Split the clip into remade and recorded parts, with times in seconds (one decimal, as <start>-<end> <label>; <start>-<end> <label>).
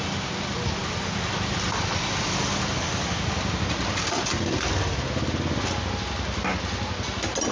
0.0-7.5 recorded